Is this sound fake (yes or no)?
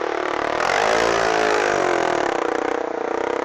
no